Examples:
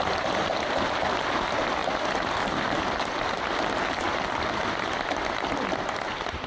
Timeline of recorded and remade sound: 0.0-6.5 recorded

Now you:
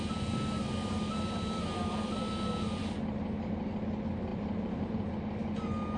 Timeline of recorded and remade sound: 0.0-4.3 recorded; 4.3-5.1 remade; 5.1-6.0 recorded

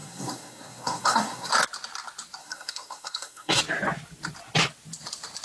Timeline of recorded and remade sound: 0.0-1.5 remade; 1.5-2.4 recorded; 2.4-3.6 remade; 3.6-5.4 recorded